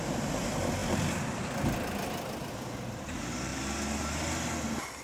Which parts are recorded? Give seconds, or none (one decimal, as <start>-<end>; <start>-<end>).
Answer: 0.0-0.8; 2.5-5.0